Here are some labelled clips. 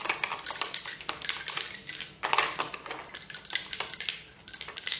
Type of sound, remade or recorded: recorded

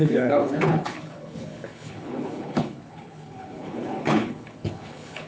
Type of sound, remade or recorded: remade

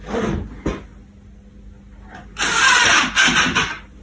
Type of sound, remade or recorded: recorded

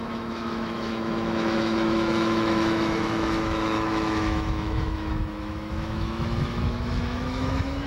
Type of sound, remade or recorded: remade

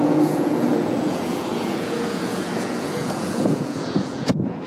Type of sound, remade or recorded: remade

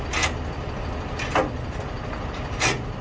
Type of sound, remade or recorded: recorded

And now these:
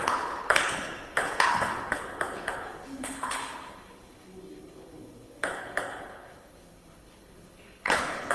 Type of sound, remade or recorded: remade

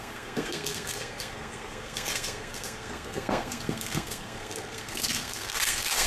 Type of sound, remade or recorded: remade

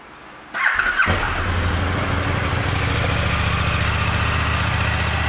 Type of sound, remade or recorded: recorded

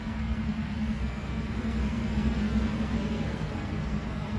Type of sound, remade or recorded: remade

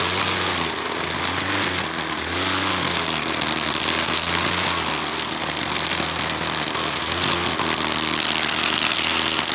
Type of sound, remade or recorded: recorded